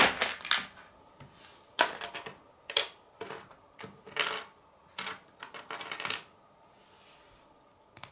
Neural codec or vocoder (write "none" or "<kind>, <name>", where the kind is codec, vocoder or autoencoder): none